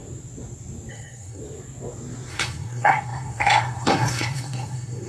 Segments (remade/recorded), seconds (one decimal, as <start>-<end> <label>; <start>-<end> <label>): 0.0-0.9 recorded; 0.9-1.4 remade; 1.4-2.3 recorded; 2.3-5.1 remade